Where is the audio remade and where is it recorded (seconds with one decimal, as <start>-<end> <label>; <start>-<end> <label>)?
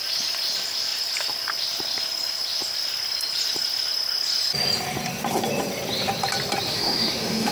0.0-6.7 recorded; 6.7-7.5 remade